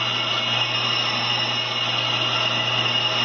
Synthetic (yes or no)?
no